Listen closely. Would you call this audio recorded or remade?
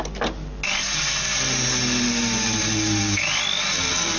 recorded